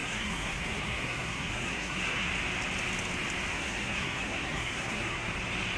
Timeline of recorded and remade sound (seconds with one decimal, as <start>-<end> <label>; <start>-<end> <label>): 0.0-2.3 remade; 2.3-3.5 recorded; 3.5-5.3 remade; 5.3-5.8 recorded